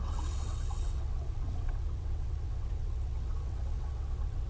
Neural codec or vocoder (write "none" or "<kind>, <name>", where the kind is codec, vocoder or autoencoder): vocoder, WaveNeXt